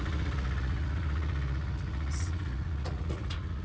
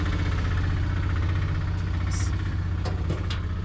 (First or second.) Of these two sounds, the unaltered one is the second